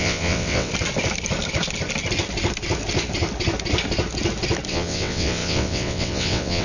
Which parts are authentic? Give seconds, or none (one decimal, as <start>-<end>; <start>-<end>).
0.7-4.7